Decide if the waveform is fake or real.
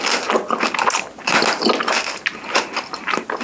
real